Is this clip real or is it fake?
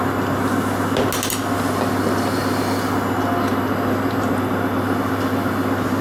real